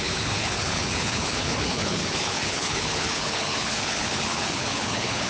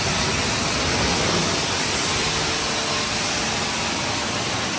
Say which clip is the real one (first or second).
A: second